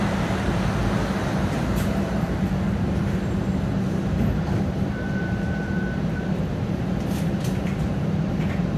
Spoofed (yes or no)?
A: yes